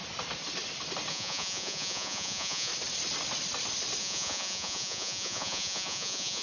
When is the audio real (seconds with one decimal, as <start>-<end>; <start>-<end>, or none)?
0.0-1.1; 2.7-4.0